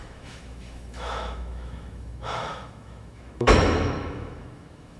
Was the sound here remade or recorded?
remade